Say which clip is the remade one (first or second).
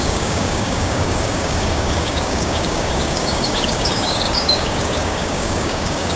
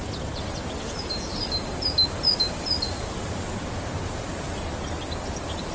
first